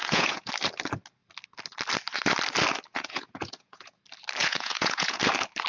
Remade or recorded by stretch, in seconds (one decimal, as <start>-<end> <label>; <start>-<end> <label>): 0.0-0.5 remade; 0.5-2.9 recorded; 2.9-4.0 remade; 4.0-4.4 recorded; 4.4-5.2 remade; 5.2-5.7 recorded